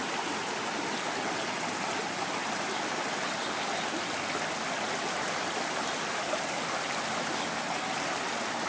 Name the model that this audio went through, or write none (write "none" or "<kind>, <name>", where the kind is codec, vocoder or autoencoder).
none